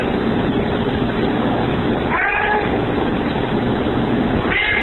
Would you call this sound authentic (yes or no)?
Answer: yes